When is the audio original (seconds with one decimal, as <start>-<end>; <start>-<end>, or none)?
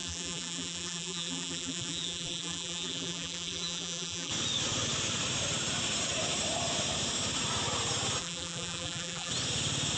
4.3-8.2; 9.3-10.0